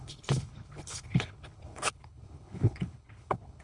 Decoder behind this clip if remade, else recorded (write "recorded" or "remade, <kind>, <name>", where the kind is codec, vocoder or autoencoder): remade, codec, HILCodec